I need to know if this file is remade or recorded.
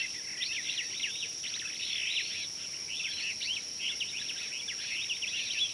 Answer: recorded